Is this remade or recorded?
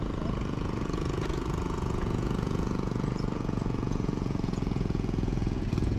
remade